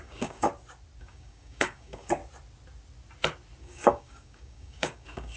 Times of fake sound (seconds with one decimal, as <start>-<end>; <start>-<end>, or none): 0.0-0.5; 1.0-2.2; 3.6-5.4